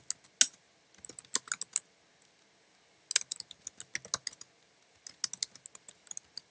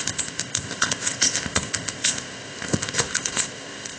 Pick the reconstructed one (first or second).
second